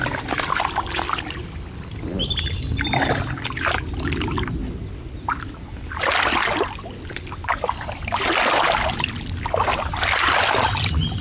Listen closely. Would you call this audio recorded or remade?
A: recorded